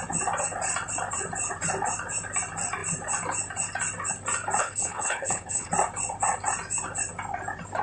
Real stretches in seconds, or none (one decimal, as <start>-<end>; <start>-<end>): 0.0-4.6; 5.7-7.8